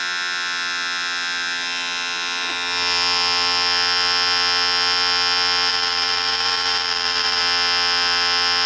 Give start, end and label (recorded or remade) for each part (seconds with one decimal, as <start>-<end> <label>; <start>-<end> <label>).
0.0-5.7 recorded; 5.7-7.4 remade; 7.4-8.7 recorded